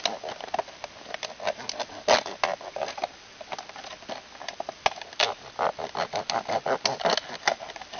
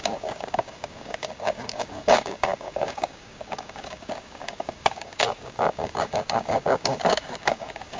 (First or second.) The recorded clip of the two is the first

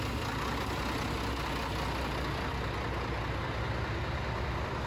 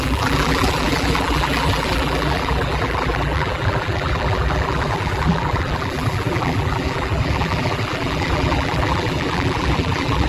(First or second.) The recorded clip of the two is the first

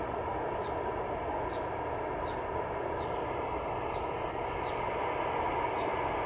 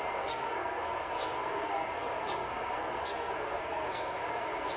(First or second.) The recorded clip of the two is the first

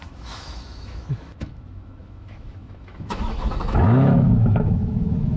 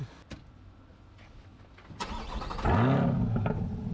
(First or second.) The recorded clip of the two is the second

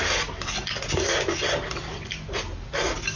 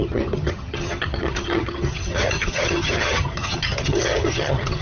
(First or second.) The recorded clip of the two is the first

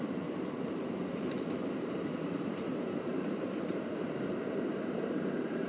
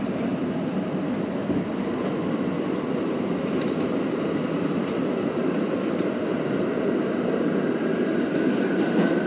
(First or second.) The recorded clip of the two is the second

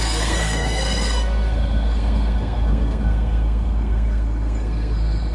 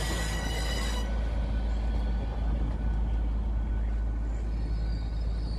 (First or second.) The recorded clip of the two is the second